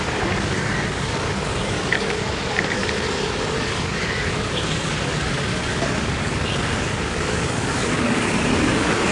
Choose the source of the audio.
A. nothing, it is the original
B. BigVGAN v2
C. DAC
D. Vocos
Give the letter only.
C